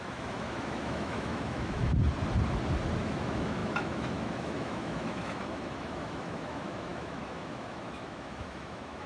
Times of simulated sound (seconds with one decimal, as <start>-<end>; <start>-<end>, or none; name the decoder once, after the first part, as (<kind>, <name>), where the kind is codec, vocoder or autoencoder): 0.0-1.8 (autoencoder, DAC-VAE); 3.0-9.1